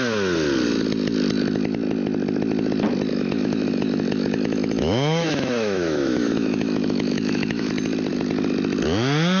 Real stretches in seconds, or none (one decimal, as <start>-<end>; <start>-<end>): 0.0-3.1; 7.7-9.4